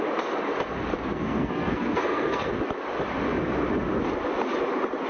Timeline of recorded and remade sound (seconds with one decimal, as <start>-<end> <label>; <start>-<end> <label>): 0.0-0.9 recorded; 0.9-2.5 remade; 2.5-5.1 recorded